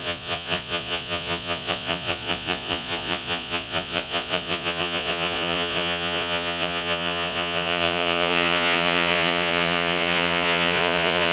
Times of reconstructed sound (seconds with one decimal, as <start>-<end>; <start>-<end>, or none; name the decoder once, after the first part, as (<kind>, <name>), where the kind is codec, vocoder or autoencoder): 0.0-11.3 (vocoder, Vocos)